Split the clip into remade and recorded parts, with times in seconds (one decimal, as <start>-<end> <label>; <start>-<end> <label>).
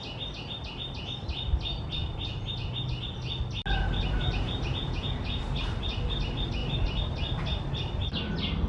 0.0-4.8 recorded; 4.8-5.4 remade; 5.4-8.7 recorded